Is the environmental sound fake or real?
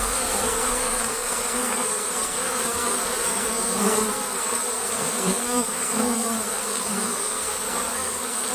fake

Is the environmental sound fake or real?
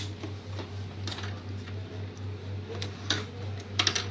real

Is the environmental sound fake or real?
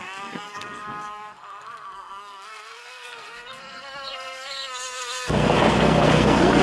fake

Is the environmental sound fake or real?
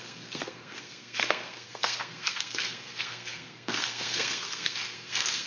fake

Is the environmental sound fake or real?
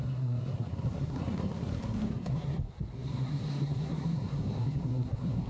fake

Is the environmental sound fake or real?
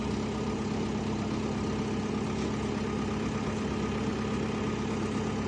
real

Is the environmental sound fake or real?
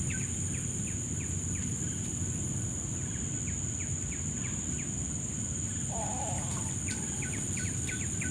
real